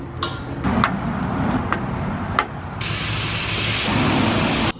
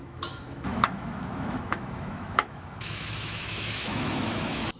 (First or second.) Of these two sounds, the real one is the first